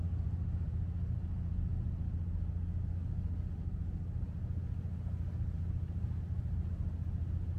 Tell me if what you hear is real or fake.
real